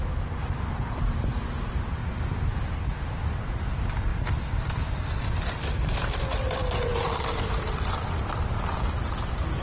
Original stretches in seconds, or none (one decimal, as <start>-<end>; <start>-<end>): 4.1-5.2